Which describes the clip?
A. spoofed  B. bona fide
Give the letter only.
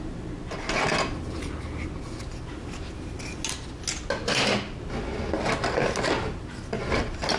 B